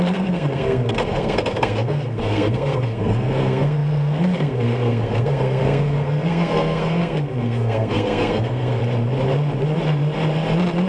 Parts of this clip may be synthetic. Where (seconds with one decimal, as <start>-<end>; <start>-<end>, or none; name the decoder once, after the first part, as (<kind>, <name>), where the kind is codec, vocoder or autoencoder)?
0.0-8.8 (codec, SNAC)